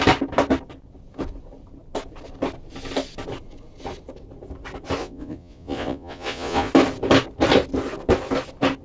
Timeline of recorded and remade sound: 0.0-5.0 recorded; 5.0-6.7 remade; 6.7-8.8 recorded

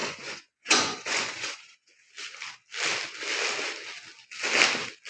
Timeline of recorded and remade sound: 0.0-2.1 remade; 2.1-5.1 recorded

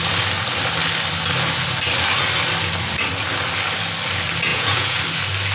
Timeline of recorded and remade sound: 0.0-4.5 recorded; 4.5-5.0 remade; 5.0-5.5 recorded